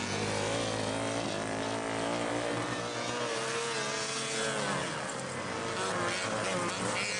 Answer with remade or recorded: recorded